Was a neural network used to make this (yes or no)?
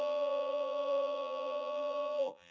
yes